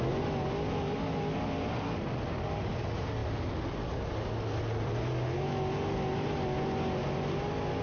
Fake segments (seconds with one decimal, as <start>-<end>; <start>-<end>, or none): none